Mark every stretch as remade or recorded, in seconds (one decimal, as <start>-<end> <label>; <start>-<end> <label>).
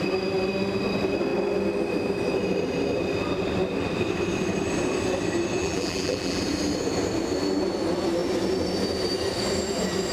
0.0-5.6 recorded; 5.6-6.4 remade; 6.4-10.1 recorded